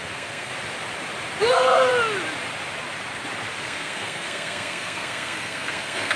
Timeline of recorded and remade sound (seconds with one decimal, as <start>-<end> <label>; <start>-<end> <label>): 0.0-0.5 remade; 0.5-1.5 recorded; 1.5-1.9 remade; 1.9-3.6 recorded; 3.6-6.2 remade